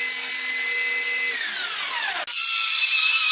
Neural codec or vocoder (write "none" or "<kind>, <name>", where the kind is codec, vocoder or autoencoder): none